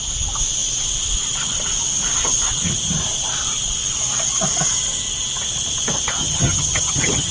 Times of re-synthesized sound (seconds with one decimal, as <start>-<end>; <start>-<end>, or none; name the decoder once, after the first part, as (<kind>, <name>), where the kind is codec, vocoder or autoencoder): 6.2-7.3 (vocoder, HiFi-GAN)